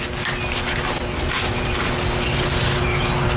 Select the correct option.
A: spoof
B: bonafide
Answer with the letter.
B